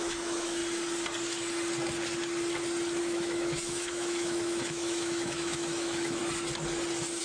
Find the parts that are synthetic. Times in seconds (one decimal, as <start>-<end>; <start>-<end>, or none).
0.0-0.6; 3.0-6.2